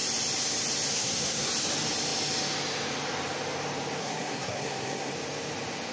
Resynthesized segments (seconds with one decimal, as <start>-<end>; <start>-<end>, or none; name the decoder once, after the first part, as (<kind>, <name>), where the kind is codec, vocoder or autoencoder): 0.9-1.5 (codec, SNAC); 4.0-5.1